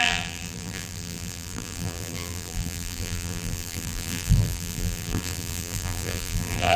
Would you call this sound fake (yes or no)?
yes